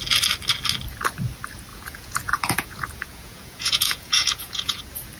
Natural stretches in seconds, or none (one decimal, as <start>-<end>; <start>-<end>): 0.0-1.7; 4.8-5.2